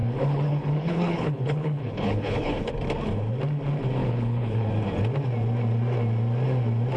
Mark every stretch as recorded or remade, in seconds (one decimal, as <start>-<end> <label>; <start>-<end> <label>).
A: 0.0-2.7 remade; 2.7-4.0 recorded; 4.0-4.7 remade; 4.7-7.0 recorded